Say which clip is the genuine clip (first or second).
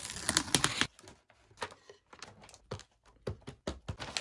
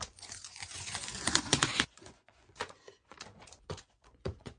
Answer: first